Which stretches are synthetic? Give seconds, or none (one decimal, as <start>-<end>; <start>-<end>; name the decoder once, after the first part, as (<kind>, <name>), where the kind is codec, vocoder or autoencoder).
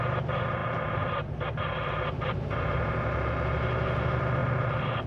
0.6-2.8 (vocoder, BigVGAN v2)